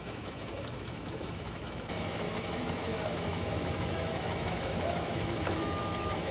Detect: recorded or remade remade